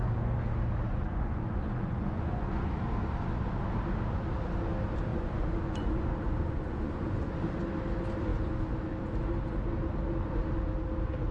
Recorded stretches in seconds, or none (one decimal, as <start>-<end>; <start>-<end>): 0.0-0.9; 2.7-5.1; 7.3-11.3